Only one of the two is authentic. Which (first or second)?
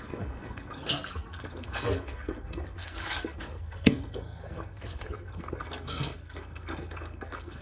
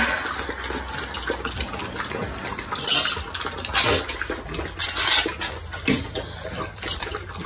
second